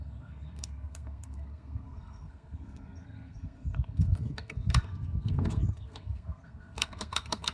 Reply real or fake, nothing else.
fake